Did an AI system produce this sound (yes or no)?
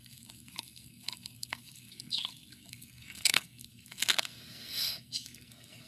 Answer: yes